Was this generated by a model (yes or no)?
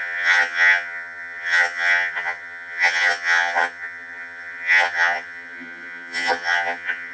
yes